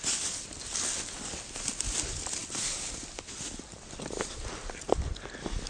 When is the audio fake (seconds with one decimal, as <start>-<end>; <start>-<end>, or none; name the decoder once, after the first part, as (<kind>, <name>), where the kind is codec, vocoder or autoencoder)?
none